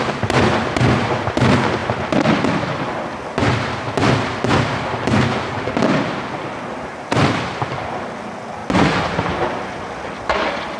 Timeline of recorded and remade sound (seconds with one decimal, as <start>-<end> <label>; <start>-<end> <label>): 0.0-10.8 recorded